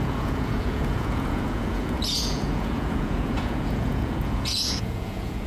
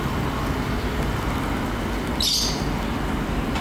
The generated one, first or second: first